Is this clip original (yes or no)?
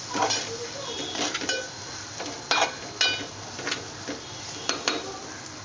yes